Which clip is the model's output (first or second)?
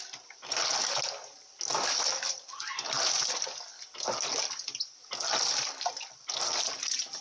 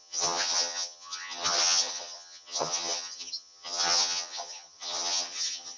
second